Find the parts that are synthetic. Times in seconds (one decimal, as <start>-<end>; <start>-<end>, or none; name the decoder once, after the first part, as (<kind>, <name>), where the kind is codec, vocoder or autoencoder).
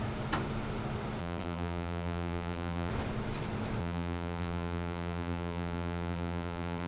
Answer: 1.2-2.9 (vocoder, BigVGAN v2); 3.8-6.9